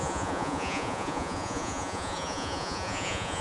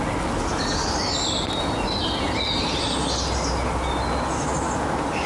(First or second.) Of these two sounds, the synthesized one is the first